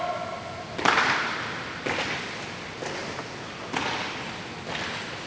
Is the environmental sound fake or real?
real